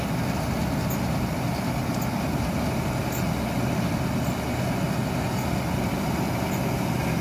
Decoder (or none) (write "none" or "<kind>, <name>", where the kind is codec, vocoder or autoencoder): none